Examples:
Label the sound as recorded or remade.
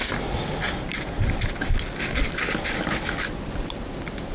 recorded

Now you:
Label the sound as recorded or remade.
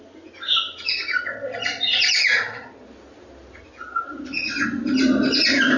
recorded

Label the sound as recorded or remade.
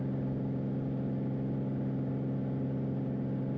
recorded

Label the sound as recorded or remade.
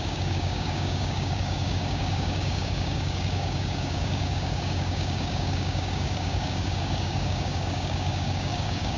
remade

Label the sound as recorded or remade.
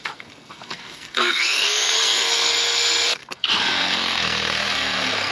remade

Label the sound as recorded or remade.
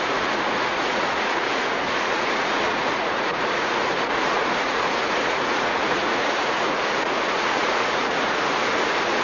remade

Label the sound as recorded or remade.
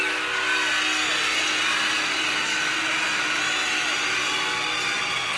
recorded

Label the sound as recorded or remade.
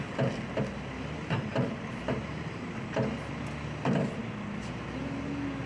recorded